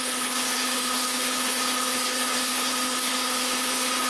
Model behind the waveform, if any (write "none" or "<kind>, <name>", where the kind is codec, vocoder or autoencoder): codec, HILCodec